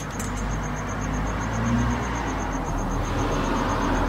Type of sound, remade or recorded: recorded